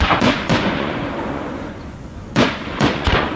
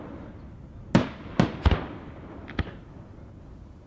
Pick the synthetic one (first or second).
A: first